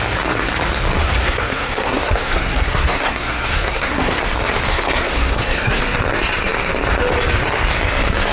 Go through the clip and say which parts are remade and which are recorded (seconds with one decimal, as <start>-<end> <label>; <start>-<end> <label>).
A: 0.0-1.0 recorded; 1.0-4.2 remade; 4.2-4.7 recorded; 4.7-5.8 remade; 5.8-8.3 recorded